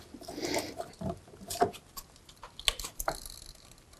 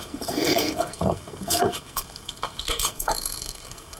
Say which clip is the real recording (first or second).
first